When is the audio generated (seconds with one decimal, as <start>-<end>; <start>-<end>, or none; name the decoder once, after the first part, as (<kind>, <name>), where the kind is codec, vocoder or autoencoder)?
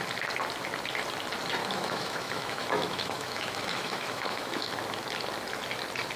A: 1.6-4.7 (autoencoder, DAC-VAE)